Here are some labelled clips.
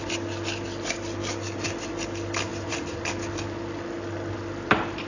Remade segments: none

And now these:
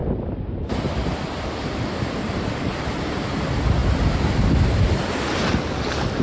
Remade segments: 0.0-1.4 (vocoder, BigVGAN v2); 2.2-3.4

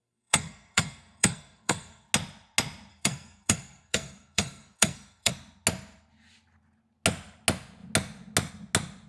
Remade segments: 0.0-2.1 (codec, SNAC); 2.9-5.3

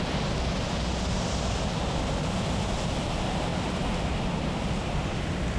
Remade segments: none